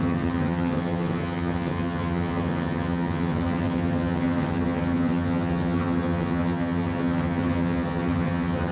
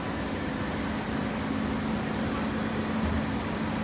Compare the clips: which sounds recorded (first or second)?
second